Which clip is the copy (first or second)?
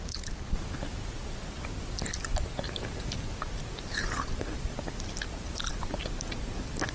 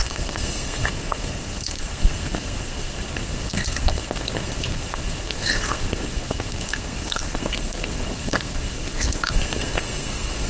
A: second